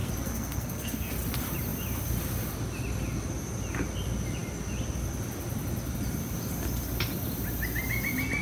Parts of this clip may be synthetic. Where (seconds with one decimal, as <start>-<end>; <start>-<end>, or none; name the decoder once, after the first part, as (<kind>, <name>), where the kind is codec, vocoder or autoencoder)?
0.0-1.1 (codec, SNAC)